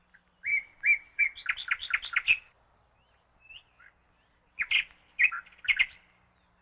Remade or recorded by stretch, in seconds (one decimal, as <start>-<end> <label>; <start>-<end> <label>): 0.0-0.5 recorded; 0.5-1.2 remade; 1.2-6.6 recorded